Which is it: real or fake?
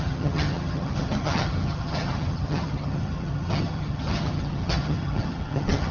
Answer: fake